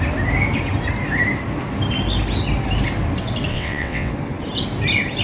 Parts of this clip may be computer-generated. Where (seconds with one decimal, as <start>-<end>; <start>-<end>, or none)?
3.5-4.1